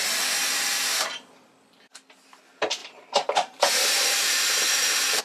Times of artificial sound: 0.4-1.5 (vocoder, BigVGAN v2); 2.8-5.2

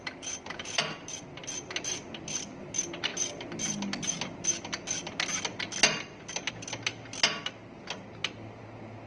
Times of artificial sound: none

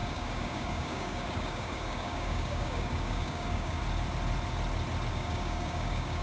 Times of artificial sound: 0.0-3.8 (codec, DAC); 5.1-6.2

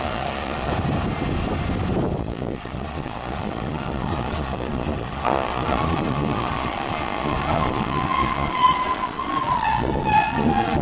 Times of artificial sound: 0.0-0.7 (vocoder, Vocos); 2.2-10.8

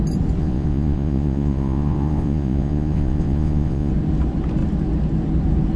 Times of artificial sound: 0.4-3.9 (vocoder, Vocos)

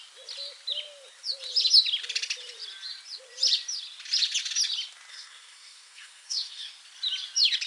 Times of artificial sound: 5.1-6.7 (codec, SNAC)

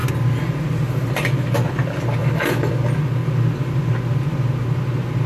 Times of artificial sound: none